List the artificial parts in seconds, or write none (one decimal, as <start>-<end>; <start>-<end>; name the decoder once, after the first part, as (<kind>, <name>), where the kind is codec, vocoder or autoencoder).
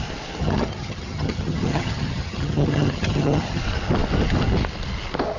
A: 0.4-3.6 (vocoder, HiFi-GAN)